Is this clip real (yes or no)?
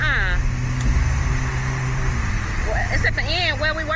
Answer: yes